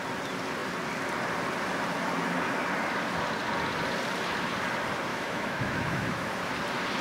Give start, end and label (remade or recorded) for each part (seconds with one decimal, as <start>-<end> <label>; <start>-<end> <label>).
0.0-5.1 recorded; 5.1-6.5 remade; 6.5-7.0 recorded